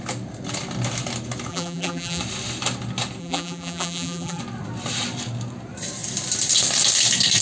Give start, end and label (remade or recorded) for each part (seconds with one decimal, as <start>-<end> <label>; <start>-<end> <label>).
0.0-1.5 recorded; 1.5-2.2 remade; 2.2-3.2 recorded; 3.2-4.4 remade; 4.4-7.4 recorded